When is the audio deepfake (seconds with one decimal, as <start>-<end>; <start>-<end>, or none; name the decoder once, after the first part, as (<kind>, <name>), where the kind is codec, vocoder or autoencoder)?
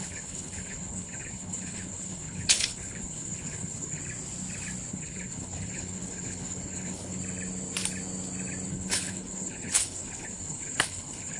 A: 0.0-4.0 (codec, HILCodec); 4.9-7.2; 8.7-11.4